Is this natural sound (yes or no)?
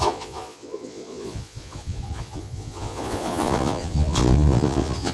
no